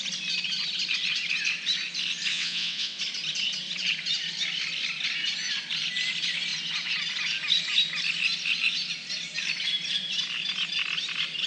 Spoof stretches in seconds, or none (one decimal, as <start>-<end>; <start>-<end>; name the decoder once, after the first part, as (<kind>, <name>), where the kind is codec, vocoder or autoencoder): 2.3-3.0 (vocoder, WaveNeXt)